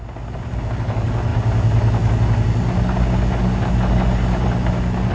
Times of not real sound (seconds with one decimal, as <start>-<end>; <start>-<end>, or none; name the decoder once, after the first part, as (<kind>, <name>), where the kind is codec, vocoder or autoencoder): none